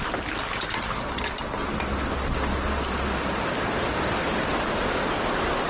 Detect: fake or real real